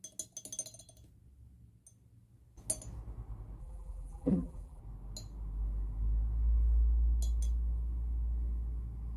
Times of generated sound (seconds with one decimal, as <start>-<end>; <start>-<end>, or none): 3.6-4.8